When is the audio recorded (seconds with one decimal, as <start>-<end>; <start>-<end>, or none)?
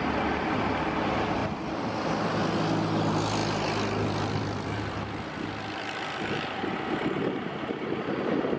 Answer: 0.0-8.6